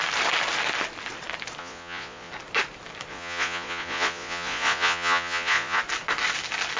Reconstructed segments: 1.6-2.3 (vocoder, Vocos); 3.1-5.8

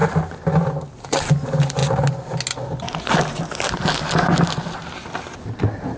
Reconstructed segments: none

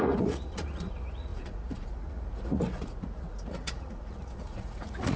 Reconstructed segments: 0.0-5.2 (vocoder, Vocos)